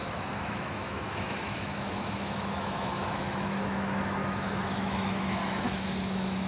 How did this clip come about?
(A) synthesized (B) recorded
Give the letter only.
A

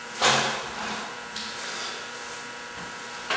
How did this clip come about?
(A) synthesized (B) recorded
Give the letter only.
B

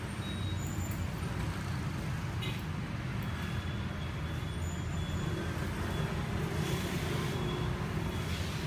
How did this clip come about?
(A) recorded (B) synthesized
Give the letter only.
A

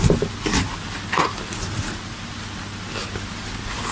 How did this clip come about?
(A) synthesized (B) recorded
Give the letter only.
B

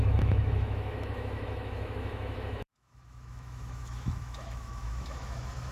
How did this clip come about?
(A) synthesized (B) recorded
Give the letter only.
A